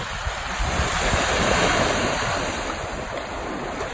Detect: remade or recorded recorded